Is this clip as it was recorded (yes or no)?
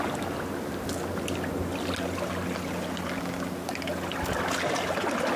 yes